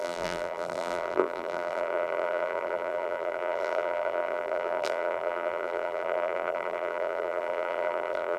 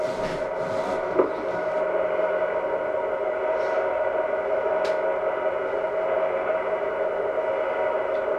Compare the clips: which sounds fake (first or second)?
first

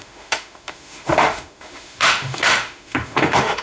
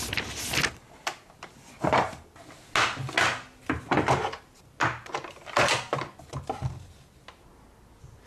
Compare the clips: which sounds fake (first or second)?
first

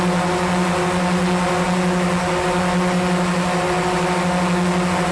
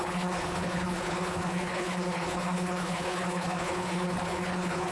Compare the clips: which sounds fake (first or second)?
second